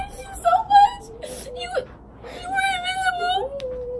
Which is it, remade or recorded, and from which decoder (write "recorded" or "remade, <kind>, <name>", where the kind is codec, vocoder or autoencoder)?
recorded